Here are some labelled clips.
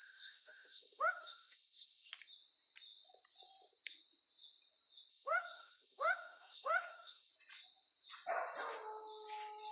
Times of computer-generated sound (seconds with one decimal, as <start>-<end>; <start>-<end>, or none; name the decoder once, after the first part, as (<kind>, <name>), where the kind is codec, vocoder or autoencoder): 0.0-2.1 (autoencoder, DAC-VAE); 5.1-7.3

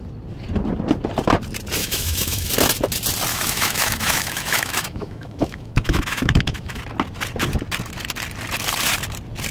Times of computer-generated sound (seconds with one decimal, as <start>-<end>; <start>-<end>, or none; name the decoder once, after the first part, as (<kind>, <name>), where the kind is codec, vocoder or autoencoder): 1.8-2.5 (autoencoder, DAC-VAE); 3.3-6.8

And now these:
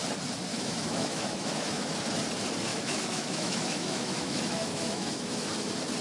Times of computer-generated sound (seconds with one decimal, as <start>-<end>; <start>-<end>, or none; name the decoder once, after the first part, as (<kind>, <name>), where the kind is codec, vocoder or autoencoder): 0.5-2.0 (autoencoder, DAC-VAE); 2.7-5.5